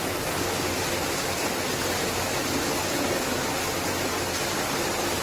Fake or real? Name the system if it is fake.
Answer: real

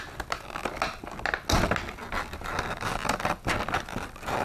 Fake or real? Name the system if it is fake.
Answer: real